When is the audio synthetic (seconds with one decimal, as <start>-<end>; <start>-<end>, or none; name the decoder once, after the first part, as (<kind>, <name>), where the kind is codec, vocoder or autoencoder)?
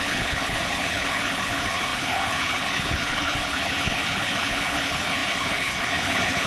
0.0-6.5 (codec, HILCodec)